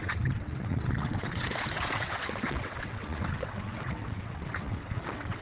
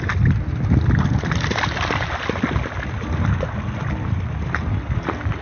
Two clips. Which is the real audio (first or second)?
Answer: second